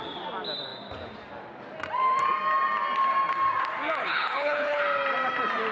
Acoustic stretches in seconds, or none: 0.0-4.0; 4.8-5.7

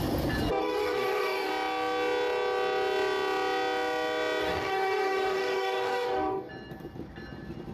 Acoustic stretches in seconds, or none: 0.0-0.6; 1.5-4.4; 6.5-7.7

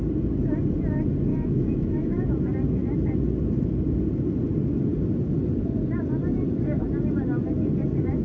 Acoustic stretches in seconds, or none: 0.0-1.3; 2.3-8.2

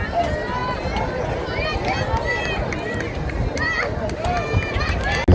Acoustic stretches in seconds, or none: 0.0-5.3